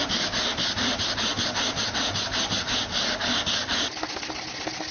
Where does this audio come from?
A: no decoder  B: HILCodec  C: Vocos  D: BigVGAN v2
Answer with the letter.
A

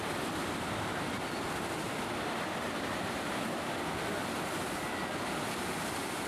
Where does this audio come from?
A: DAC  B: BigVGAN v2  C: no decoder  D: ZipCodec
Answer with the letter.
C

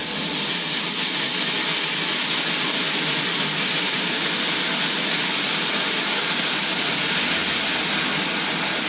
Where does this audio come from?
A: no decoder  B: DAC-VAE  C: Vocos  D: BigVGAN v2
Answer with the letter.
A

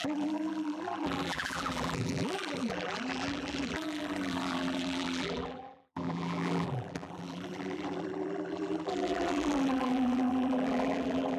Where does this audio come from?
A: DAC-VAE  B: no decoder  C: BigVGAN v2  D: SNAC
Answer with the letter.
C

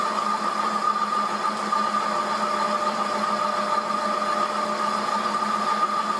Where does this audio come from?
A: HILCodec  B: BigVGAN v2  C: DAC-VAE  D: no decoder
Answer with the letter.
D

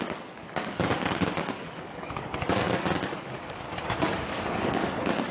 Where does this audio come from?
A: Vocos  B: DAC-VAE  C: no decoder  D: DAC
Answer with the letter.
D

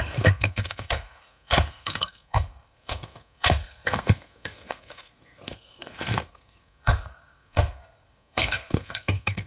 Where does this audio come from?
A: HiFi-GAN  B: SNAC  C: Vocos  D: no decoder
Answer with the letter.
B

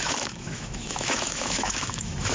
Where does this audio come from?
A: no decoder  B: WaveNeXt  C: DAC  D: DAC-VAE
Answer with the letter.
D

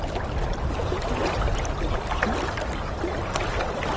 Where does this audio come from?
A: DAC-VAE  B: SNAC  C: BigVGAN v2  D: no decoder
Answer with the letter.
D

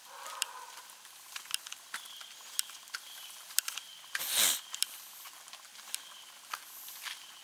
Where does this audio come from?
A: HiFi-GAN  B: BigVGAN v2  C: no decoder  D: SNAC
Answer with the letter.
C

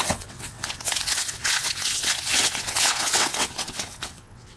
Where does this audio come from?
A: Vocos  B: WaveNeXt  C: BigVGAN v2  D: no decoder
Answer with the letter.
B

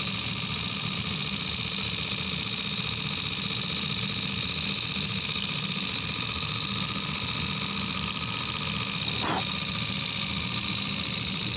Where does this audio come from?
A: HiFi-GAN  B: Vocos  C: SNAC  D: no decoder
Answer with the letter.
D